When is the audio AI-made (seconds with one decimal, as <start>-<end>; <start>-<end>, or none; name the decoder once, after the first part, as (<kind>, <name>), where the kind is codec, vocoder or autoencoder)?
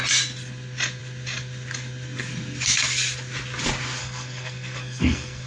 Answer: 4.0-5.5 (codec, SNAC)